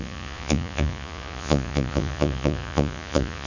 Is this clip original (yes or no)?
no